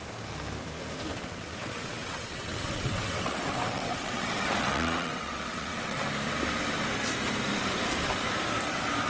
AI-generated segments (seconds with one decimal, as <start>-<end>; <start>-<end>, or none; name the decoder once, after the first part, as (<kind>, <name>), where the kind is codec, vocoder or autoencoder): 1.1-6.0 (vocoder, WaveNeXt)